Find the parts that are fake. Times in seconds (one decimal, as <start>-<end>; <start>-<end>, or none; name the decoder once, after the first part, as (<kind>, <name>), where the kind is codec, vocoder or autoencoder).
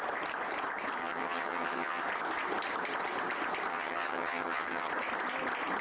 1.0-2.0 (vocoder, HiFi-GAN); 3.7-4.9